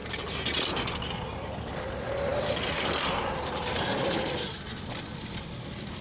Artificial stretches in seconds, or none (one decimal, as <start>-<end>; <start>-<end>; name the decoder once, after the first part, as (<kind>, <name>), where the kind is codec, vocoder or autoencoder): none